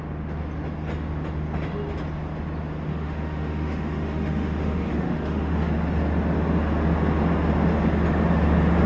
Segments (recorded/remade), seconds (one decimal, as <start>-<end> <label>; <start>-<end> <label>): 0.0-2.9 recorded; 2.9-5.7 remade; 5.7-8.9 recorded